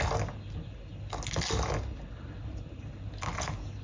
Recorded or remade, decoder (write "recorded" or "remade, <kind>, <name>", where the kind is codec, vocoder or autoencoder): recorded